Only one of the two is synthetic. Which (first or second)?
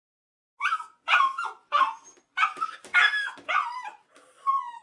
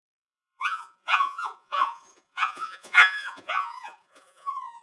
second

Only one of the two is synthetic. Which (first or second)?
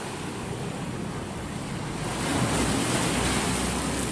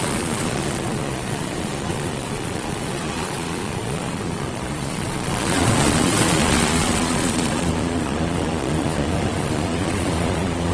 second